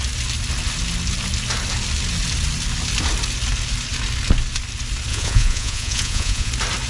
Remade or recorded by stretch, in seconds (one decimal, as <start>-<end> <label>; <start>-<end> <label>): 0.0-5.1 recorded; 5.1-6.5 remade; 6.5-6.9 recorded